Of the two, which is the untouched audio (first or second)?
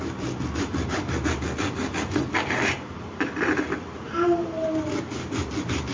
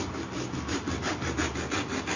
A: second